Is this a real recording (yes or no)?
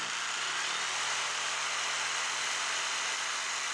yes